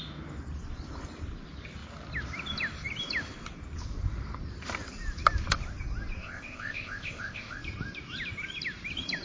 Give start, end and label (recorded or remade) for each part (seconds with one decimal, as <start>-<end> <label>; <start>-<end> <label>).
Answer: 0.0-6.2 recorded; 6.2-7.6 remade; 7.6-9.2 recorded